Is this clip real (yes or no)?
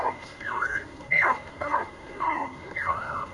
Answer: no